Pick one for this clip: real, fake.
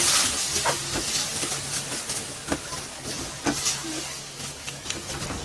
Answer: real